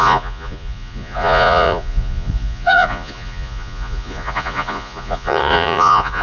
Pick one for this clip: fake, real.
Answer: fake